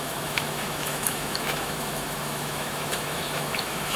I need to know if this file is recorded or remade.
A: remade